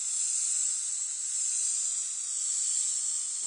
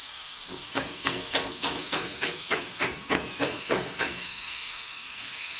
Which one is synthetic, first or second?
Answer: second